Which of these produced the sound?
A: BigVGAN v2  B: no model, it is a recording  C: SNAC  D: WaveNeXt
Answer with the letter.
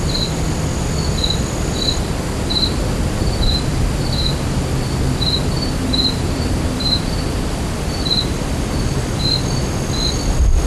B